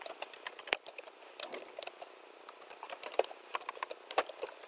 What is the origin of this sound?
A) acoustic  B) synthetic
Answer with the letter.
A